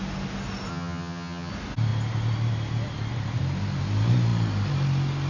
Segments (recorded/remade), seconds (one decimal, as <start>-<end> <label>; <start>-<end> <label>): 0.0-0.7 recorded; 0.7-1.5 remade; 1.5-5.3 recorded